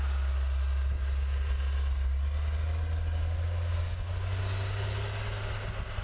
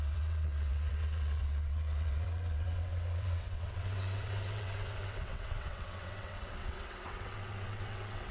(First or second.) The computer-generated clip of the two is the second